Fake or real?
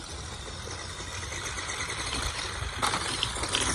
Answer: real